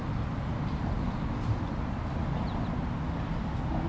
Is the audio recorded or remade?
recorded